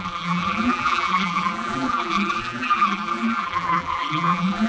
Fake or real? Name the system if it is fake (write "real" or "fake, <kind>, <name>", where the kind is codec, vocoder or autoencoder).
fake, vocoder, BigVGAN v2